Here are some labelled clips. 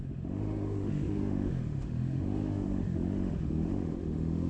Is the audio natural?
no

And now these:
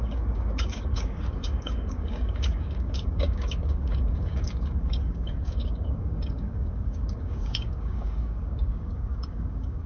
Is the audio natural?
no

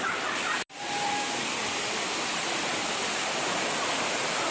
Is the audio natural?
yes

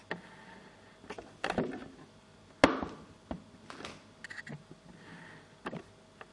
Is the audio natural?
yes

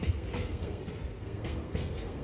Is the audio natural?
no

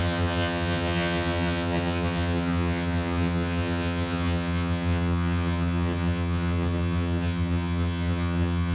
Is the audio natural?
no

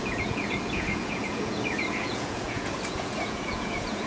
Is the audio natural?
no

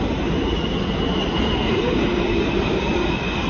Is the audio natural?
yes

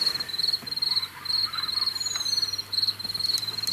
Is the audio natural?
yes